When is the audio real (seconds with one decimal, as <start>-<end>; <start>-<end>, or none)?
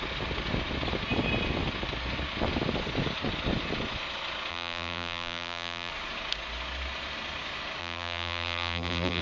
0.0-4.5; 5.9-7.8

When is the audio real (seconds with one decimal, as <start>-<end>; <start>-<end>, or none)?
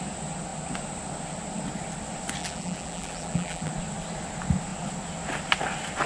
0.0-2.4; 3.7-6.1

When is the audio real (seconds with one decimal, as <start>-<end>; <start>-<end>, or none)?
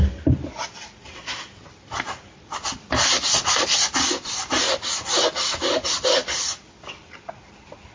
0.0-7.9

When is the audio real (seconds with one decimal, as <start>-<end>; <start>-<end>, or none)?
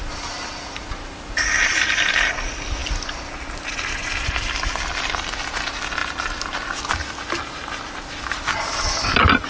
0.0-9.5